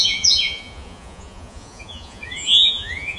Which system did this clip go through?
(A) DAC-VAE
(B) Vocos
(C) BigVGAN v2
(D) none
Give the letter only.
B